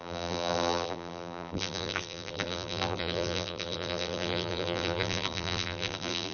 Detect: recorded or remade remade